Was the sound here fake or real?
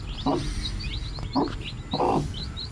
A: real